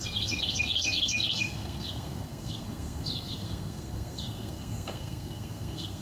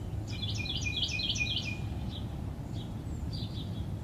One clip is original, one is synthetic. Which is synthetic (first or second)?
first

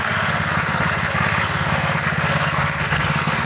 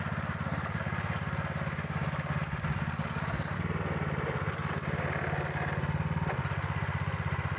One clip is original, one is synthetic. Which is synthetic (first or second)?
first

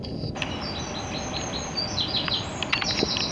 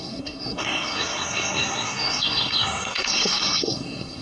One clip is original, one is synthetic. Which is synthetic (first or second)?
second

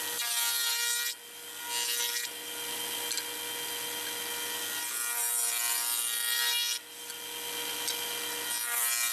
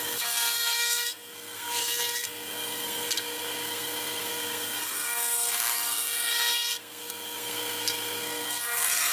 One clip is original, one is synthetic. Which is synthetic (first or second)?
second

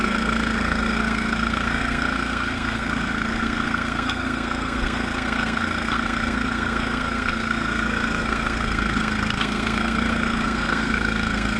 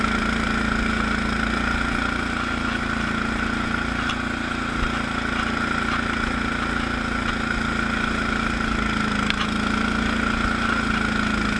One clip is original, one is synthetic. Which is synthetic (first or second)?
first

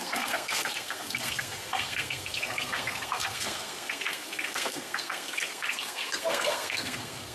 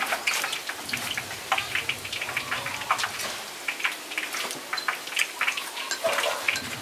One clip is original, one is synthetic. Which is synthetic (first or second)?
first